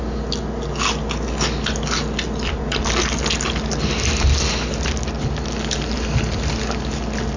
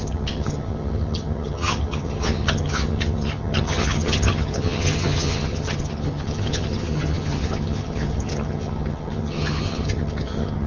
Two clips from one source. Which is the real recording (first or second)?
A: first